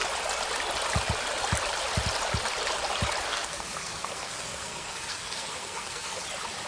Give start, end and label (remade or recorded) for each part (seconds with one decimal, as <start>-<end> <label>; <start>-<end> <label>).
0.0-3.3 recorded; 3.3-6.2 remade; 6.2-6.7 recorded